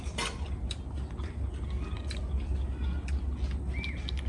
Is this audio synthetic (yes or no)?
no